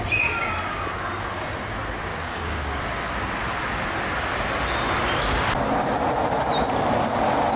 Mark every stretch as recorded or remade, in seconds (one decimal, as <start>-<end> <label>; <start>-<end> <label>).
0.0-2.1 recorded; 2.1-2.8 remade; 2.8-7.6 recorded